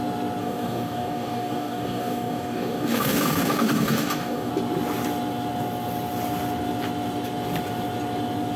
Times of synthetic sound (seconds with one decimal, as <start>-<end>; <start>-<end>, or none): 0.4-4.5